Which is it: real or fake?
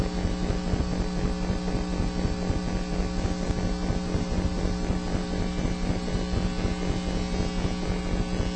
real